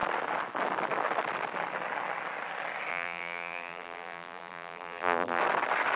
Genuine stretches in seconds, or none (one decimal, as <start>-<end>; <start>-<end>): 0.0-2.9; 5.4-6.0